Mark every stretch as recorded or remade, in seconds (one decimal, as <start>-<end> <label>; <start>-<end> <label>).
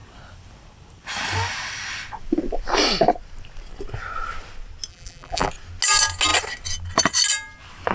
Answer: 0.0-4.9 recorded; 4.9-5.5 remade; 5.5-7.9 recorded